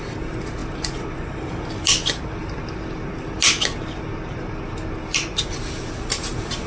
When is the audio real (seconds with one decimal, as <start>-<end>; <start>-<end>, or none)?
2.4-6.3